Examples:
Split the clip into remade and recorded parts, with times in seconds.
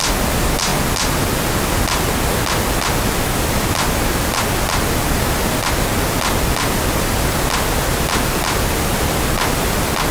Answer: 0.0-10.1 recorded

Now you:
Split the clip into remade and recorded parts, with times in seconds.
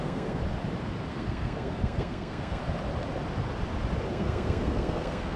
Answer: 0.0-0.4 remade; 0.4-1.1 recorded; 1.1-2.6 remade; 2.6-4.1 recorded; 4.1-5.4 remade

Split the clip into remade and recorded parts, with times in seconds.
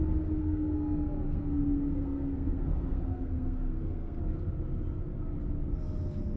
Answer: 0.0-0.4 recorded; 0.4-4.2 remade; 4.2-6.4 recorded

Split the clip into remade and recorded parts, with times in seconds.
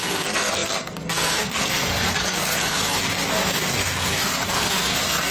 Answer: 0.0-5.3 remade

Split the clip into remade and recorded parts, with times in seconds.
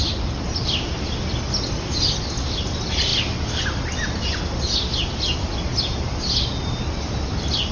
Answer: 0.0-7.7 recorded